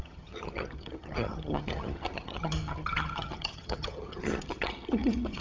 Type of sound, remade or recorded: remade